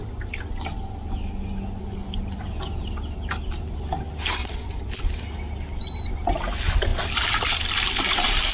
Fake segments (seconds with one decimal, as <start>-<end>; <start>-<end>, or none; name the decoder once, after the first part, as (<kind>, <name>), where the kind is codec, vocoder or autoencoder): 4.4-4.9 (vocoder, Vocos)